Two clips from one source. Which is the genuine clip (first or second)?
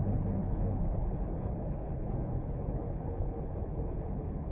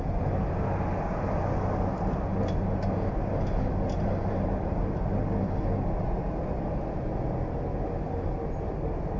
second